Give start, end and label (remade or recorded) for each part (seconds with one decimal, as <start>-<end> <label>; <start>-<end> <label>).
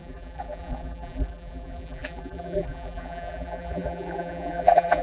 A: 0.0-5.0 remade